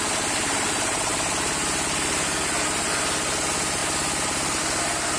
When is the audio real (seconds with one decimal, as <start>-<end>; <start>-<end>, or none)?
0.0-5.2